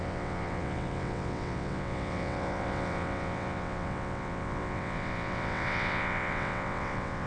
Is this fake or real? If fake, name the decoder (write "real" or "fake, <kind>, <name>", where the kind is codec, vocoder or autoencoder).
fake, vocoder, WaveNeXt